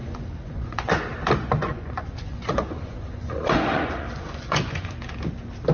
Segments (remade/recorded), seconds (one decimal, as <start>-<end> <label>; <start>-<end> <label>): 0.0-1.0 remade; 1.0-1.7 recorded; 1.7-5.1 remade; 5.1-5.7 recorded